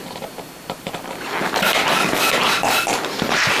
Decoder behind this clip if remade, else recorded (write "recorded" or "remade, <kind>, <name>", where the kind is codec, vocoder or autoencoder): recorded